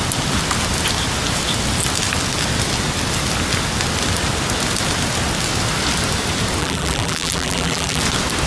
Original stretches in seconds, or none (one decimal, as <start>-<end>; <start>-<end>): 0.0-6.6; 8.0-8.5